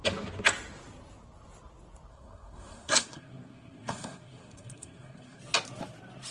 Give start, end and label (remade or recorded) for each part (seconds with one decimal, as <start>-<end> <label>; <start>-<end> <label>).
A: 0.0-2.1 recorded; 2.1-5.4 remade; 5.4-6.3 recorded